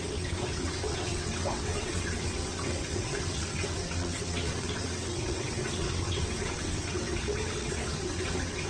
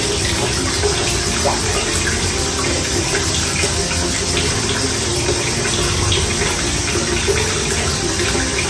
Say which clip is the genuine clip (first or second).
second